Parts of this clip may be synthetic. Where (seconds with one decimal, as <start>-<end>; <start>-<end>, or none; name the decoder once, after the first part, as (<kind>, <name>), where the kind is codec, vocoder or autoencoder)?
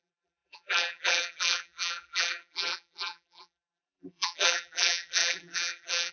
0.0-6.1 (vocoder, BigVGAN v2)